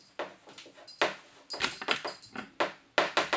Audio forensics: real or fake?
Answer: real